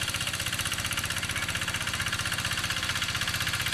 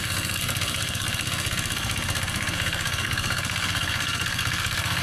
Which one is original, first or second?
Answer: first